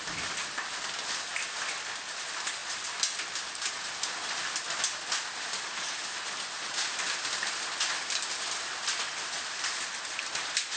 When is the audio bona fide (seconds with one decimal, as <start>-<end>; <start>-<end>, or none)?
0.0-10.8